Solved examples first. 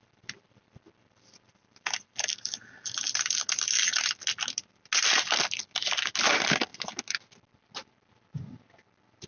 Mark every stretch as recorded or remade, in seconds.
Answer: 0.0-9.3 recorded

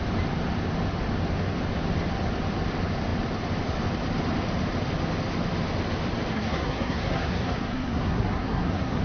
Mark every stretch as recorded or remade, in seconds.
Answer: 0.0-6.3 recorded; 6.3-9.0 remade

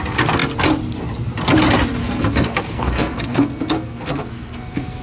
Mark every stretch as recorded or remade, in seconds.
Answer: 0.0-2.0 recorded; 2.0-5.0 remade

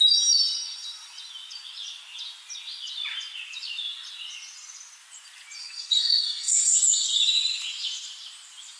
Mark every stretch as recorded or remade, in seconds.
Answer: 0.0-5.6 recorded; 5.6-6.8 remade; 6.8-8.8 recorded

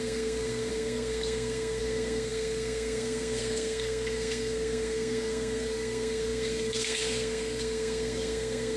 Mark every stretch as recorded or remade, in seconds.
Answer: 0.0-8.8 remade